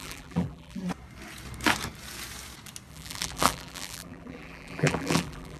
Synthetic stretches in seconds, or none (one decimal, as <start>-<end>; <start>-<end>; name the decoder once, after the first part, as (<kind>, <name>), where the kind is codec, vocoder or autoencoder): 0.0-0.8 (vocoder, BigVGAN v2); 2.9-5.6